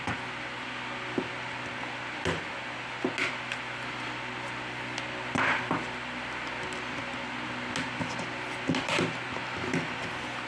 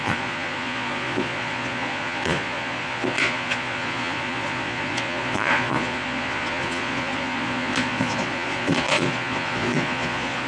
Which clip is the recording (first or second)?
first